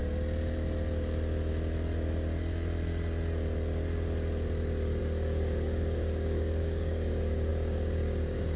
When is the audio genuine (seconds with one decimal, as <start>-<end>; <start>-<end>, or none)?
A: 0.0-5.0